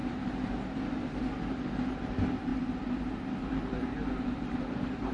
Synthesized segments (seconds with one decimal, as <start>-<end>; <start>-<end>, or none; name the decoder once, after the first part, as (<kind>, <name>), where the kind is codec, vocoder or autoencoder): 1.6-2.5 (vocoder, BigVGAN v2); 3.4-5.1